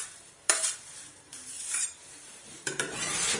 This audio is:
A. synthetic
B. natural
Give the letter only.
A